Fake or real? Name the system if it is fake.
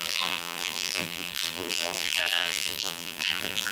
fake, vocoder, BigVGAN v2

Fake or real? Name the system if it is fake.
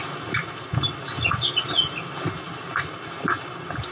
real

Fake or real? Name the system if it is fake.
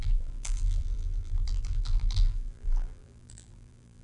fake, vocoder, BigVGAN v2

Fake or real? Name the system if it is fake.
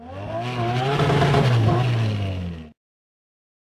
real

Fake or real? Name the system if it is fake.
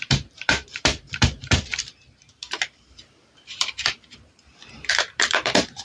fake, vocoder, BigVGAN v2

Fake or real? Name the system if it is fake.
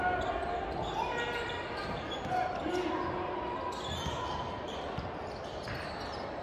real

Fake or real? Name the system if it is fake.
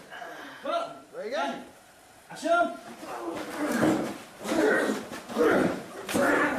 fake, vocoder, BigVGAN v2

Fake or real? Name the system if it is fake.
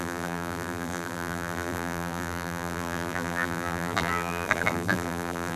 fake, vocoder, BigVGAN v2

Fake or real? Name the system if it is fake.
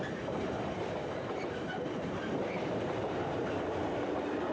fake, vocoder, BigVGAN v2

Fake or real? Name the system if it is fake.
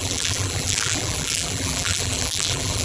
fake, vocoder, BigVGAN v2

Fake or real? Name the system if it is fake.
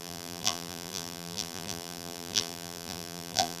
fake, vocoder, BigVGAN v2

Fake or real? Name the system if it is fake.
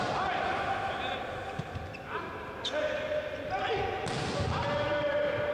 real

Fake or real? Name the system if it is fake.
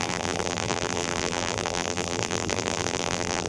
fake, vocoder, BigVGAN v2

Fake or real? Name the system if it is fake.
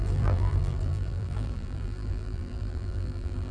fake, vocoder, BigVGAN v2